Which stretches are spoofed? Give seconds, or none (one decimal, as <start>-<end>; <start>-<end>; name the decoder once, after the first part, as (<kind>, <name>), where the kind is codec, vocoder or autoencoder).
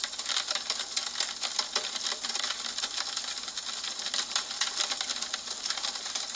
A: none